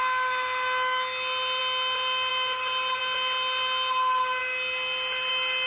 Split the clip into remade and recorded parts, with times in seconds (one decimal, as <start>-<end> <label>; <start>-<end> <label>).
0.0-5.7 recorded